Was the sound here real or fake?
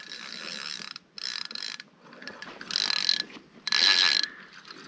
real